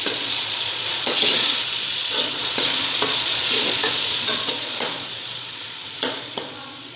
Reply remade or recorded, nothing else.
remade